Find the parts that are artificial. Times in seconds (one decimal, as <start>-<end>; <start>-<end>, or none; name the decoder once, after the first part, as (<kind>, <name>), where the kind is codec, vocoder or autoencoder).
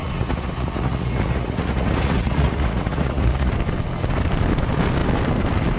0.0-3.5 (vocoder, Vocos)